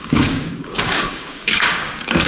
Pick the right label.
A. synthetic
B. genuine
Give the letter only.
A